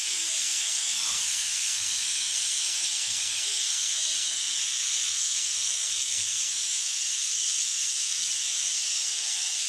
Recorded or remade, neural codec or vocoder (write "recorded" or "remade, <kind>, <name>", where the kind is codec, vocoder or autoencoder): remade, codec, SNAC